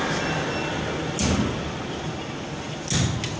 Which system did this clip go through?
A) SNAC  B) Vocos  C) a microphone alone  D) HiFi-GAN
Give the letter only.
C